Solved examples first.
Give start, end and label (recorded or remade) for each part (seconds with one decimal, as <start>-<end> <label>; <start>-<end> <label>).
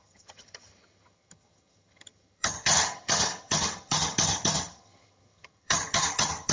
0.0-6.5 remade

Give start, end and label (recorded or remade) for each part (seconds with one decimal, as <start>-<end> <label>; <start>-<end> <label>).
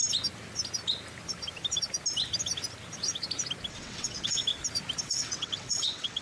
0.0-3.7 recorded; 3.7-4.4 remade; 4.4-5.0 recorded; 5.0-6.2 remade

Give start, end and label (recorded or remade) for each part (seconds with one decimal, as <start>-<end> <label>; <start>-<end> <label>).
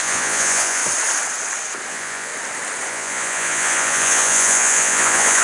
0.0-0.8 remade; 0.8-1.9 recorded; 1.9-2.3 remade; 2.3-2.9 recorded; 2.9-5.4 remade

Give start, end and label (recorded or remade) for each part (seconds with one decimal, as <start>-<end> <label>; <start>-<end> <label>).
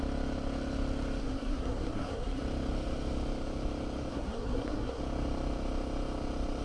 0.0-1.2 recorded; 1.2-2.4 remade; 2.4-4.1 recorded; 4.1-5.0 remade; 5.0-6.6 recorded